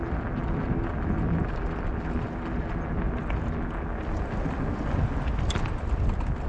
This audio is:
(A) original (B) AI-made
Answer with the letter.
A